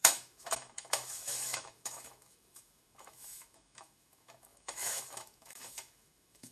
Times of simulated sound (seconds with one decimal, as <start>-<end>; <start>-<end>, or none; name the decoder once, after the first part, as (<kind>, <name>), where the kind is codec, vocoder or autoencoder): 0.0-6.5 (autoencoder, DAC-VAE)